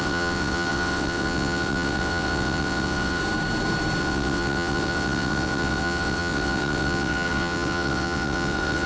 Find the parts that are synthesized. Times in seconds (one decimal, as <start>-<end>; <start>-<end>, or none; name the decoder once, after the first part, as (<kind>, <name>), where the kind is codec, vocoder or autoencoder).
0.0-3.2 (vocoder, WaveNeXt); 4.0-8.9